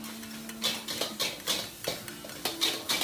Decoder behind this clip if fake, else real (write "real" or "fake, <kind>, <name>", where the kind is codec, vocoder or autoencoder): real